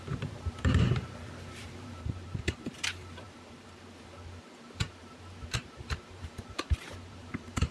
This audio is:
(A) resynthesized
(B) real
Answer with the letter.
A